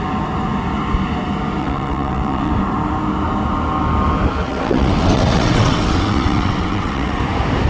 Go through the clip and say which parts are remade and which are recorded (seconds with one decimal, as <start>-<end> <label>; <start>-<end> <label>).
0.0-1.6 recorded; 1.6-2.5 remade; 2.5-4.4 recorded; 4.4-7.2 remade; 7.2-7.7 recorded